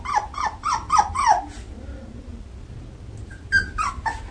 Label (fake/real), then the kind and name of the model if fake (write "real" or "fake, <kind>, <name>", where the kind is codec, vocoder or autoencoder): real